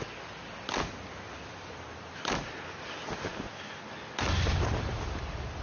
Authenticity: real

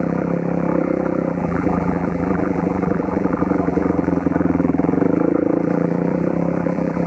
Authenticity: fake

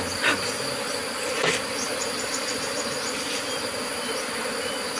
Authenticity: real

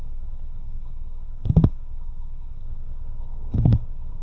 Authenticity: fake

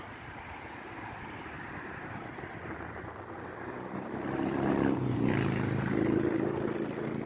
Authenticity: real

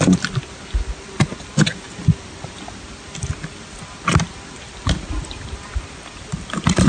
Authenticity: real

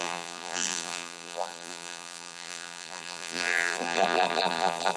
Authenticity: fake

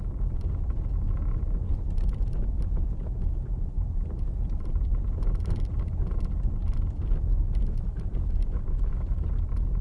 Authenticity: real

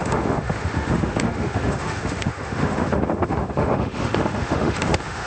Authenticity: fake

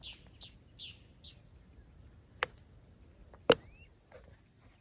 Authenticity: real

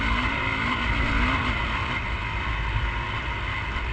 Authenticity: real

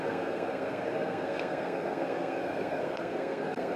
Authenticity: fake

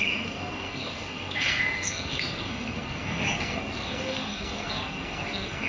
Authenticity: fake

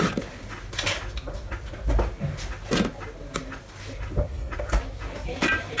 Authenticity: real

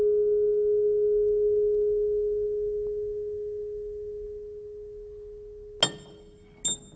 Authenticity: real